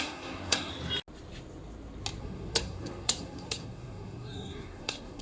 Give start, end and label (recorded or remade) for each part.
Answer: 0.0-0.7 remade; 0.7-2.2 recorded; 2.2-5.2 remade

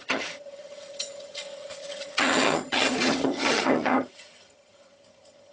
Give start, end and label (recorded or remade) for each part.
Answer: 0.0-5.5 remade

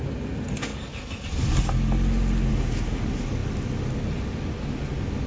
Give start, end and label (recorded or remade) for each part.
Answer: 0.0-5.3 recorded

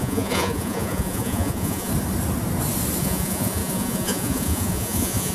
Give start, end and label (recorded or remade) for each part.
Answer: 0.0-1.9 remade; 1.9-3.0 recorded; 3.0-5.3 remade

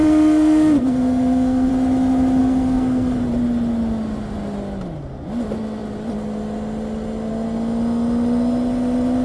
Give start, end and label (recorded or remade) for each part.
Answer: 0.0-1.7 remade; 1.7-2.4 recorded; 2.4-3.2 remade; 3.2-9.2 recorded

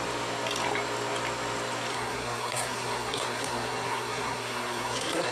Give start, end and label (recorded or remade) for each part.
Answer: 0.0-1.9 recorded; 1.9-5.3 remade